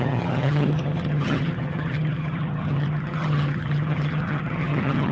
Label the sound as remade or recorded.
remade